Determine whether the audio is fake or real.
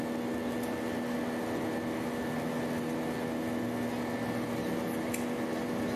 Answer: real